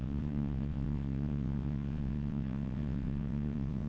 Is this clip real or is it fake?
fake